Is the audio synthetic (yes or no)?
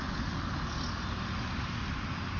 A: no